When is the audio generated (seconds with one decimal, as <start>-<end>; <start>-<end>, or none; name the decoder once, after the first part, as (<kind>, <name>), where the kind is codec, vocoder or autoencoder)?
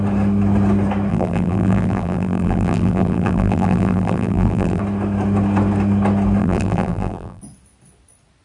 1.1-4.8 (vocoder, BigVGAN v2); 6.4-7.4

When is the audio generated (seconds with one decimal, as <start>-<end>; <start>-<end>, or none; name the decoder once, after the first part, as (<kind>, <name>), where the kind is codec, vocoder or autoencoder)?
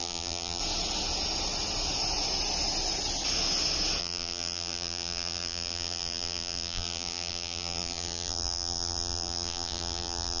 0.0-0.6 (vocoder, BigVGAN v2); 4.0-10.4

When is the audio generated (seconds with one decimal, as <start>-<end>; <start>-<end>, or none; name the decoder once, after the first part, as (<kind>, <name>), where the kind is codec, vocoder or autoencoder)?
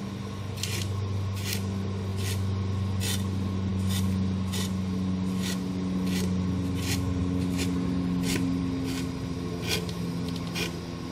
none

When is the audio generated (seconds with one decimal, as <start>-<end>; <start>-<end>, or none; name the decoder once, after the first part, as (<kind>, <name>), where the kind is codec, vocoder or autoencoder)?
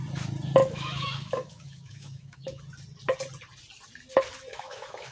0.6-2.6 (autoencoder, DAC-VAE); 4.5-5.1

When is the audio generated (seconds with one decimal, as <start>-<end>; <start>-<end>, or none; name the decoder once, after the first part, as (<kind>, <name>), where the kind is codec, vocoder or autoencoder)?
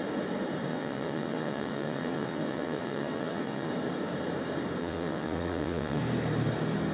0.7-3.7 (vocoder, WaveNeXt); 4.8-6.0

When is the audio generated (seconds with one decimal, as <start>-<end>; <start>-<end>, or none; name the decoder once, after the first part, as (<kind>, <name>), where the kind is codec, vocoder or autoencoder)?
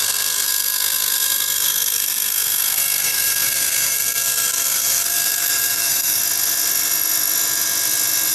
0.0-6.2 (codec, SNAC)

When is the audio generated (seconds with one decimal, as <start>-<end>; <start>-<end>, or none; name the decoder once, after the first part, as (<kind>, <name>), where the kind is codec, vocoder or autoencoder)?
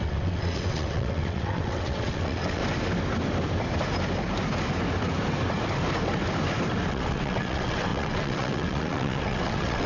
0.0-2.6 (vocoder, WaveNeXt); 6.9-9.9